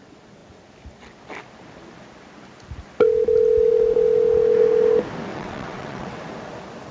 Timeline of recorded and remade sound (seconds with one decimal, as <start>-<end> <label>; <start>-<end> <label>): 0.0-5.3 recorded; 5.3-6.2 remade; 6.2-6.9 recorded